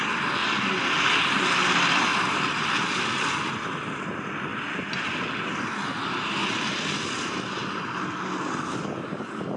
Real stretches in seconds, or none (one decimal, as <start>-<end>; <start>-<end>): 0.0-0.4; 1.1-7.6; 8.2-9.6

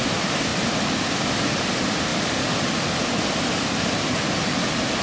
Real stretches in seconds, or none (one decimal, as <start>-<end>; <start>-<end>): 0.5-1.7; 2.1-4.0

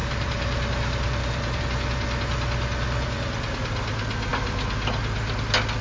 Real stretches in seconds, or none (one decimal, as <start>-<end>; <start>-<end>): 1.6-4.3; 5.0-5.8